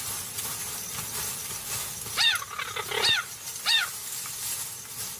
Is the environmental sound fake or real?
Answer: real